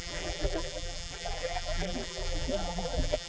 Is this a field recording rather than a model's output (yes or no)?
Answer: no